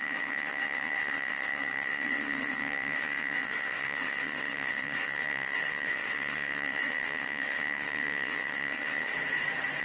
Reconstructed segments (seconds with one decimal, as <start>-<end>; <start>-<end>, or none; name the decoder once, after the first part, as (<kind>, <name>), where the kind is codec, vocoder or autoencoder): 0.0-9.1 (vocoder, WaveNeXt)